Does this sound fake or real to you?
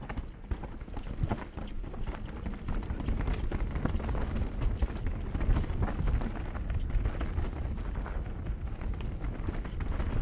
real